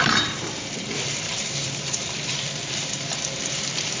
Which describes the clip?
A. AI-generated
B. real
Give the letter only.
A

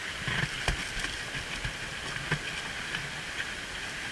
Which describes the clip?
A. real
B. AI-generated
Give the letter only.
A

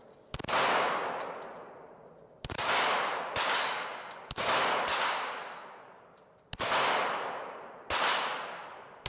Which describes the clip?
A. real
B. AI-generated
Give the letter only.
A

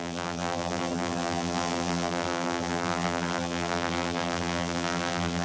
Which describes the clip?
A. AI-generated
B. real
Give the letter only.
A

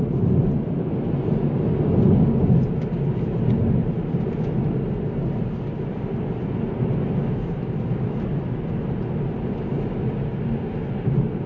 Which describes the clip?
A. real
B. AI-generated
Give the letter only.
A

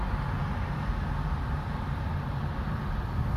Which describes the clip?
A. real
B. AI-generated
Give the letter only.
A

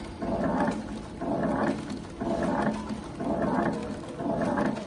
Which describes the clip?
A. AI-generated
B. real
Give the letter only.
B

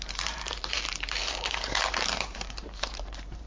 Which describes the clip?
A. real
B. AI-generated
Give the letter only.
B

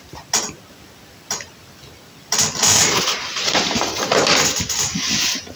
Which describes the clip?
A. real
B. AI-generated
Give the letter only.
A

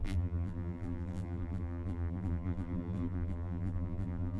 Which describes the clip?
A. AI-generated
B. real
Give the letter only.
A